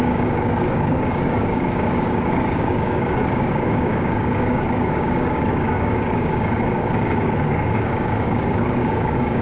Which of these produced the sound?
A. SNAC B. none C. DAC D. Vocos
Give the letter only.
C